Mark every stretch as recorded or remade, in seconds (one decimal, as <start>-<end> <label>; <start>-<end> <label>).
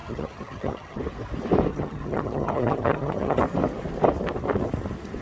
0.0-1.0 remade; 1.0-1.7 recorded; 1.7-3.4 remade; 3.4-5.2 recorded